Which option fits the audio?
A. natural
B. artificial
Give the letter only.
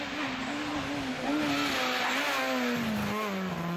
A